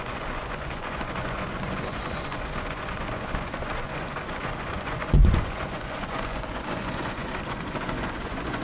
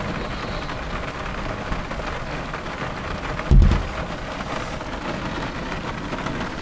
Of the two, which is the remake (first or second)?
first